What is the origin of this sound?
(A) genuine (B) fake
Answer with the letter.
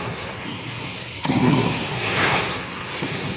B